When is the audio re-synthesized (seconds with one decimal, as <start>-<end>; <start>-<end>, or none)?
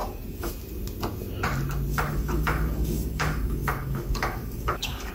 0.0-0.5; 1.9-5.1